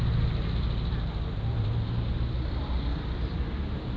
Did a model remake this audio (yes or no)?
no